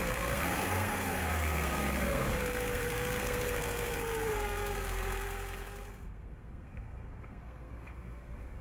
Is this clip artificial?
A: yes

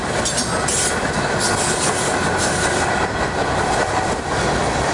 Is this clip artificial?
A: no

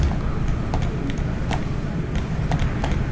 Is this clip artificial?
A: no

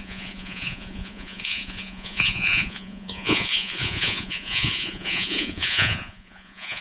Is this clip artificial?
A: yes